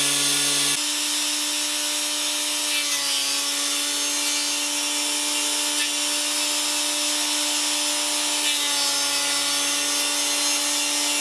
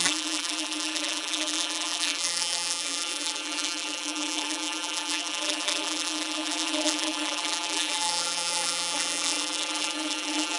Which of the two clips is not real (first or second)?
second